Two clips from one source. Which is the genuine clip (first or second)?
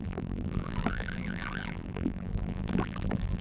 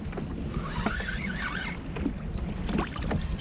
second